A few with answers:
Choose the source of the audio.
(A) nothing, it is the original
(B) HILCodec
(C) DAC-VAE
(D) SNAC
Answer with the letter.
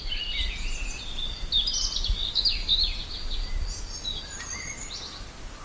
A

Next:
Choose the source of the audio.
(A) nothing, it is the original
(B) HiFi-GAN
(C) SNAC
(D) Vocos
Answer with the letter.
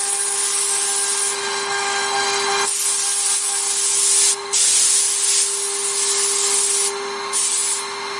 A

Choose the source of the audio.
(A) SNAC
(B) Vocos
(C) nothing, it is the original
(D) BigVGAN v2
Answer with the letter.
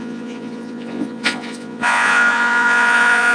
B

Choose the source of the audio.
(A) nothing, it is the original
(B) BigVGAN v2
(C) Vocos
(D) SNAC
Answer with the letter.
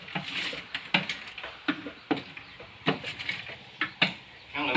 A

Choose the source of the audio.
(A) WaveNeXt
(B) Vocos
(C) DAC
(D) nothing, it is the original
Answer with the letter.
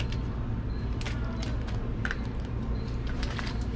D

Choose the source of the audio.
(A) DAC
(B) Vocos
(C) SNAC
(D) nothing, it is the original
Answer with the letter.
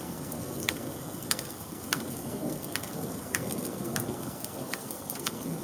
C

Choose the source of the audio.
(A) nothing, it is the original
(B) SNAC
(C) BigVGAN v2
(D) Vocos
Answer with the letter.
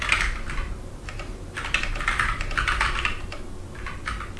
A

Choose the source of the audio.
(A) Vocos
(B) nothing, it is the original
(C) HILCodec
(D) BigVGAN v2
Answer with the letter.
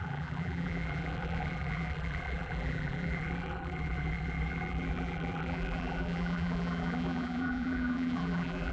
D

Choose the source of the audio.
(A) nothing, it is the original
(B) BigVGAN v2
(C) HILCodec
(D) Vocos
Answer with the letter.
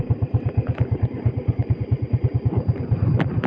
B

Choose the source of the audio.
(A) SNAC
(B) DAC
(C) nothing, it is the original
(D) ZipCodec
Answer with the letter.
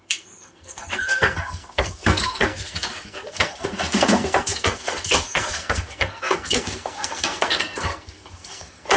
A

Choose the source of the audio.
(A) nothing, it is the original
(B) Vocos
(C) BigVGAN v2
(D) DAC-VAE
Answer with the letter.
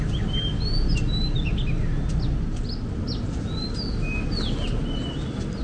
A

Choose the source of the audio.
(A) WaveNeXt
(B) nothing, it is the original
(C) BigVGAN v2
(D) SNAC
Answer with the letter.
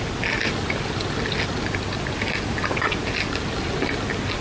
B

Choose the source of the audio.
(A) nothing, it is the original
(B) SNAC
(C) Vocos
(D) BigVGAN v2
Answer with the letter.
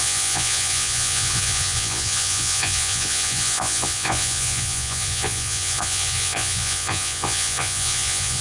C